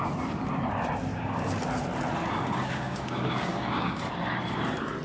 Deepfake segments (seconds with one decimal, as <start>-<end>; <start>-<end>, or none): 1.1-1.6; 2.2-4.0